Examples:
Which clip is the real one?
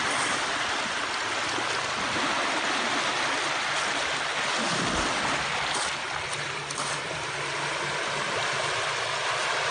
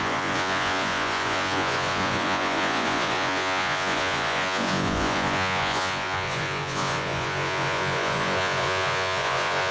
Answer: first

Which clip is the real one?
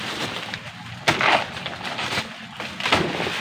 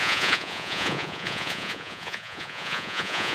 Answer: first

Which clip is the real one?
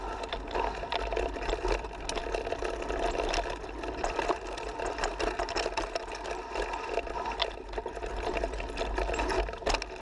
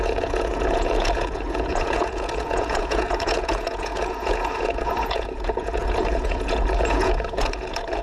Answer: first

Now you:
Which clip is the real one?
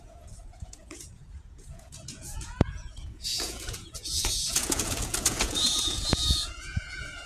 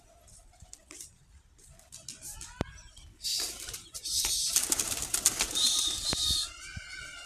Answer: second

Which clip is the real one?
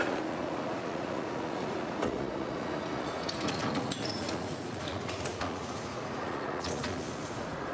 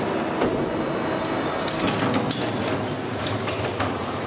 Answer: second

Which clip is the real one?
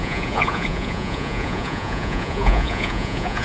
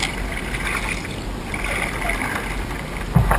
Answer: second